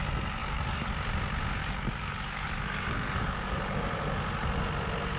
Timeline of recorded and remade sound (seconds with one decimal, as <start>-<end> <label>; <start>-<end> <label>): 0.0-0.4 recorded; 0.4-0.9 remade; 0.9-1.6 recorded; 1.6-3.8 remade; 3.8-5.2 recorded

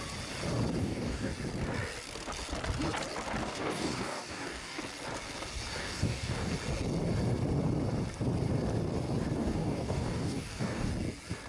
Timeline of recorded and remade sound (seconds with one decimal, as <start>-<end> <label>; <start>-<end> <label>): 0.0-0.8 recorded; 0.8-1.3 remade; 1.3-3.4 recorded; 3.4-4.8 remade; 4.8-5.8 recorded; 5.8-6.5 remade; 6.5-9.4 recorded; 9.4-10.9 remade; 10.9-11.5 recorded

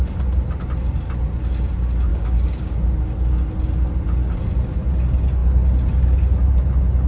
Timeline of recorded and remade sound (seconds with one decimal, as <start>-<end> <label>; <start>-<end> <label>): 0.0-2.1 recorded; 2.1-2.7 remade; 2.7-7.1 recorded

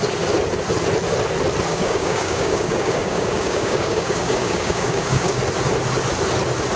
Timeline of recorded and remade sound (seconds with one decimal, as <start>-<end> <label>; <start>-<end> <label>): 0.0-1.7 recorded; 1.7-5.4 remade; 5.4-6.8 recorded